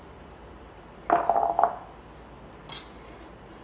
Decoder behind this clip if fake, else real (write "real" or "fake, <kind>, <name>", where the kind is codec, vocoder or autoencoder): real